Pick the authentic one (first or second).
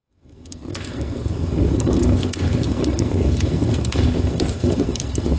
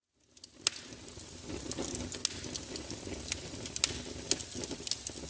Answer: second